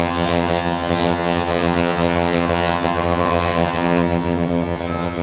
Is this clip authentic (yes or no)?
no